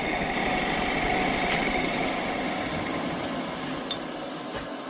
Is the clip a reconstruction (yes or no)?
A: yes